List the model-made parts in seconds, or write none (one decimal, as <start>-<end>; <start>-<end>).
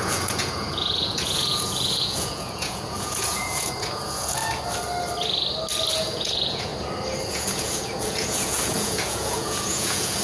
0.0-4.4; 5.9-6.7; 7.3-10.2